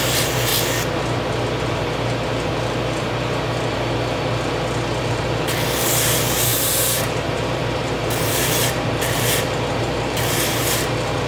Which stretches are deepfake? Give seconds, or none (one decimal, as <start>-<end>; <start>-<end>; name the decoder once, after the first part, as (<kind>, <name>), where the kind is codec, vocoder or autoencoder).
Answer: 0.0-0.5 (vocoder, BigVGAN v2); 5.0-11.3

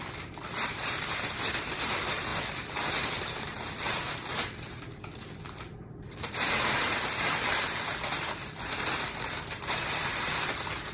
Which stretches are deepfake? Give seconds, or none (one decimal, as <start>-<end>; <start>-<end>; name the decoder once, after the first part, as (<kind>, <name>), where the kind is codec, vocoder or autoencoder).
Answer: 0.0-10.9 (vocoder, BigVGAN v2)

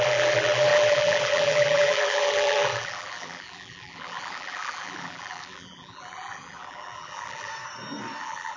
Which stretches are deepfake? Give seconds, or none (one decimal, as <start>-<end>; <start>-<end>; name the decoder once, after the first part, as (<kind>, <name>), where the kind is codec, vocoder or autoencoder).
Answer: 0.0-7.5 (vocoder, BigVGAN v2); 8.2-8.6

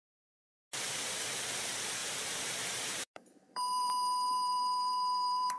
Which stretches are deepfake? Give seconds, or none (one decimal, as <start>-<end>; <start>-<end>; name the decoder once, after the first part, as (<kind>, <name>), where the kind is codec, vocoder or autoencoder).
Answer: 2.0-5.6 (vocoder, BigVGAN v2)

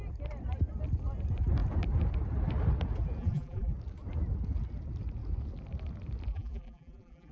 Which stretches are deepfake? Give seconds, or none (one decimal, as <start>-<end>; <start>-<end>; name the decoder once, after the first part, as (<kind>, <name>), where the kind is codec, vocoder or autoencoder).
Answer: 3.2-3.7 (vocoder, BigVGAN v2); 6.3-7.3

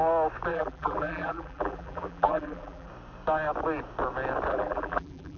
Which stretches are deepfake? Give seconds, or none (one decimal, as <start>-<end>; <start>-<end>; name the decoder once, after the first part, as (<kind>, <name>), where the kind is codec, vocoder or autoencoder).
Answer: 0.5-2.9 (vocoder, BigVGAN v2); 4.5-5.4